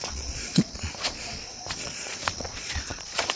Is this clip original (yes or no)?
no